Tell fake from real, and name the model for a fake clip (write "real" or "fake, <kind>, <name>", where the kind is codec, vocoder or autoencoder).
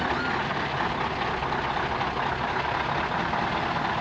real